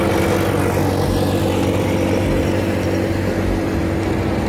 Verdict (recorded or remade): recorded